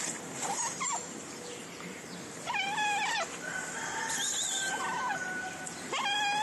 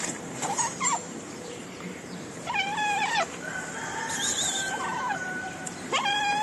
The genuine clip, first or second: first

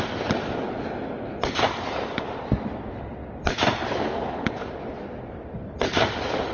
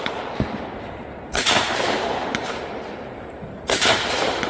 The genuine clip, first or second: first